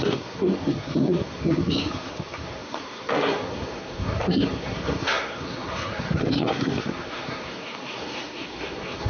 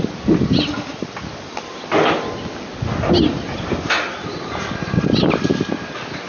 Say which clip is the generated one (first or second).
first